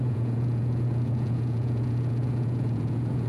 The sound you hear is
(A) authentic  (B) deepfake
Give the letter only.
B